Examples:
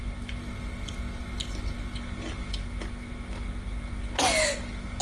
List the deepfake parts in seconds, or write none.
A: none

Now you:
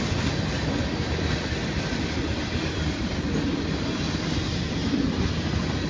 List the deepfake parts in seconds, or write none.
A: none

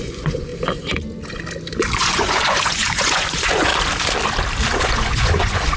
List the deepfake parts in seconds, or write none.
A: 0.0-0.5 (vocoder, Vocos); 2.0-3.7; 4.8-5.8